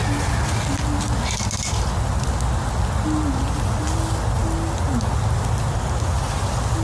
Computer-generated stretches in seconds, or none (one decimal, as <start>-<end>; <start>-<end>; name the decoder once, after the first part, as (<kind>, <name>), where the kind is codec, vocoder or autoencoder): 3.8-4.4 (vocoder, BigVGAN v2); 5.6-6.8